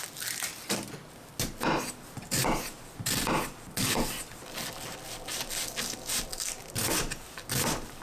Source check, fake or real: real